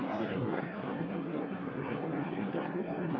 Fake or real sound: fake